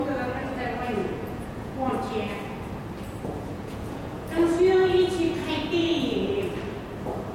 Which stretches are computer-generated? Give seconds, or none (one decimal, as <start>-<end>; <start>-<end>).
1.0-1.9; 3.5-4.3; 5.8-6.4